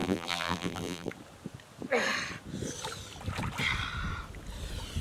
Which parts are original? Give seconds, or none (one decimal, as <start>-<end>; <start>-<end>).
1.1-5.0